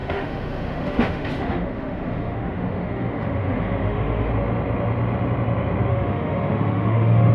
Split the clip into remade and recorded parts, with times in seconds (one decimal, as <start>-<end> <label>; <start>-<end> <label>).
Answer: 0.0-4.3 remade; 4.3-5.9 recorded; 5.9-7.3 remade